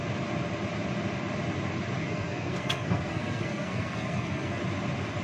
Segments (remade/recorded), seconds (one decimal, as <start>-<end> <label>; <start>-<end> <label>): 0.0-2.0 recorded; 2.0-4.6 remade; 4.6-5.2 recorded